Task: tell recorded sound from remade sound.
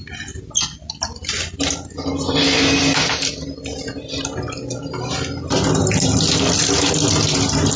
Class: recorded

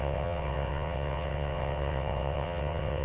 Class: remade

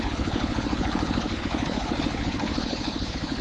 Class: remade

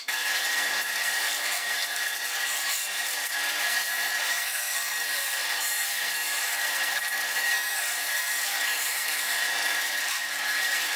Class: remade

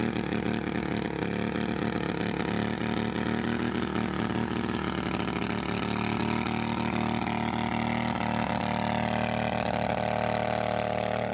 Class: recorded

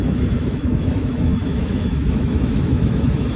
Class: remade